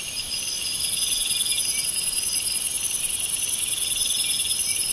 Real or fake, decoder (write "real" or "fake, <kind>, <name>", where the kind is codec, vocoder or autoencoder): real